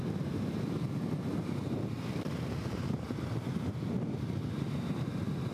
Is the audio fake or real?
fake